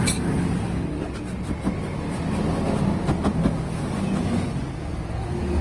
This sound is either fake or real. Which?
real